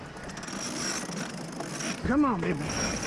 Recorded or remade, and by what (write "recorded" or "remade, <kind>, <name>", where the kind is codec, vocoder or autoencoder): recorded